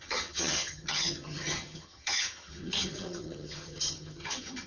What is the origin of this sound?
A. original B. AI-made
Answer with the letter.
B